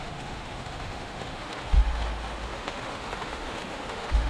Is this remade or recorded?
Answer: remade